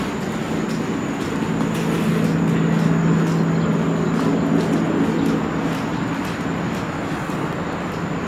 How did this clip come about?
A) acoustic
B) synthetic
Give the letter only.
A